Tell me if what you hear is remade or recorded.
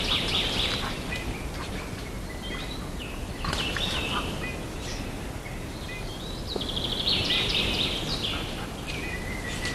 recorded